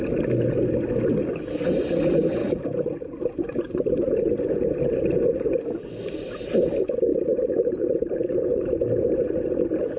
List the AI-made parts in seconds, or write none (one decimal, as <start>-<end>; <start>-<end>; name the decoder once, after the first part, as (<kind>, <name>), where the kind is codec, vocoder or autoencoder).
2.4-4.2 (vocoder, BigVGAN v2); 7.1-9.4